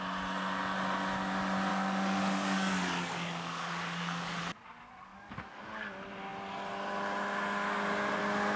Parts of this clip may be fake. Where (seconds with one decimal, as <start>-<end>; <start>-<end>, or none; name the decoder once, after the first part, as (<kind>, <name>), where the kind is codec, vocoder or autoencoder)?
1.7-4.4 (codec, DAC); 5.1-5.6